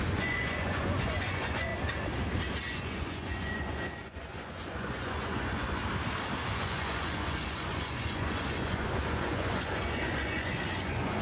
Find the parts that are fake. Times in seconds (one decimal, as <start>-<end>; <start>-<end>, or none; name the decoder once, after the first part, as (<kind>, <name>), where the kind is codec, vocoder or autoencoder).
0.0-1.7 (vocoder, Vocos); 2.7-5.8; 6.5-11.2

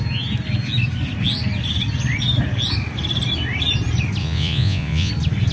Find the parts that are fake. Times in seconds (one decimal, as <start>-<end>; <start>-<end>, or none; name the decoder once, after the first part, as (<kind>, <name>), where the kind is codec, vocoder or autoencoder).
4.2-5.1 (vocoder, Vocos)

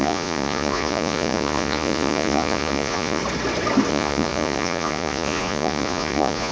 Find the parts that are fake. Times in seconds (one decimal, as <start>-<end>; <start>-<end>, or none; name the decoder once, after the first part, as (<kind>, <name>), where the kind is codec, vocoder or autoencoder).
0.0-3.2 (vocoder, Vocos); 3.9-6.5

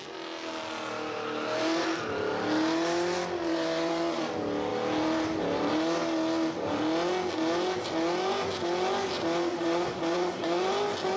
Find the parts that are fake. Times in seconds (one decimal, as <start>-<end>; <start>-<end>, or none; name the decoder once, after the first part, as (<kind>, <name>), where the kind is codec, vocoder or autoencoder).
3.5-4.2 (vocoder, Vocos); 9.5-10.7

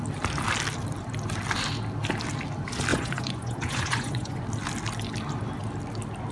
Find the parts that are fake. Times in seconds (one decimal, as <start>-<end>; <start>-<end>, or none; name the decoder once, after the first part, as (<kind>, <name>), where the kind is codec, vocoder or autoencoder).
2.9-4.4 (vocoder, Vocos)